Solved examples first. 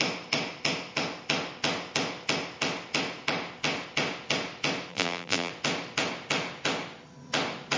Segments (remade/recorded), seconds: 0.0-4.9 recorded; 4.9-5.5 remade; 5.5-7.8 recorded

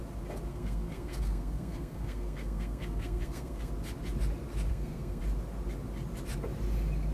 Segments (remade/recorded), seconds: 0.0-0.5 recorded; 0.5-3.7 remade; 3.7-4.7 recorded; 4.7-5.2 remade; 5.2-7.1 recorded